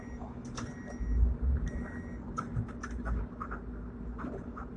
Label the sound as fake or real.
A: real